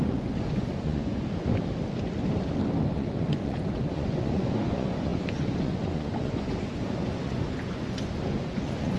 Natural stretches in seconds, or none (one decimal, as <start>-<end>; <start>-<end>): 1.5-2.9